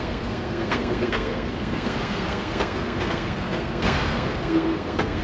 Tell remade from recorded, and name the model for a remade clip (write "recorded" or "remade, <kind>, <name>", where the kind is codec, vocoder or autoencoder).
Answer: remade, codec, SNAC